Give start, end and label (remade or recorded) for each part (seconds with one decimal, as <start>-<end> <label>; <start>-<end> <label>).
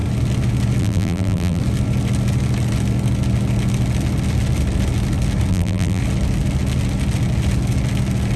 0.0-0.8 recorded; 0.8-1.6 remade; 1.6-5.5 recorded; 5.5-6.0 remade; 6.0-8.4 recorded